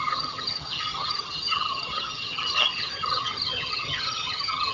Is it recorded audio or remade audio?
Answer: remade